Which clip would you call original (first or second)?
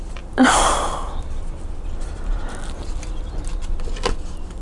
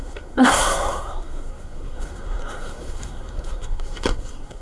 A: first